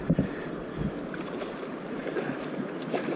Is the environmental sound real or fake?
fake